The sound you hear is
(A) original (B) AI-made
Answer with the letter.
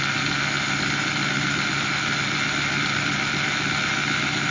A